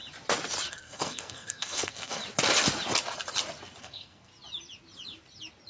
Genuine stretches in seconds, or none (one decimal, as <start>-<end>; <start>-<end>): 0.0-0.7; 2.2-3.8; 4.3-5.7